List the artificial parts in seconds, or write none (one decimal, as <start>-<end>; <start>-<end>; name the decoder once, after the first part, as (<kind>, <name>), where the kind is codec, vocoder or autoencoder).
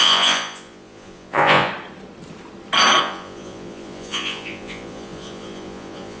0.0-1.7 (vocoder, Vocos); 3.0-6.2